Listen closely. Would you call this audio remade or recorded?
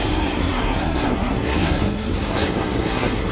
remade